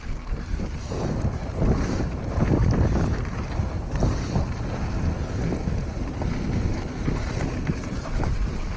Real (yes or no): yes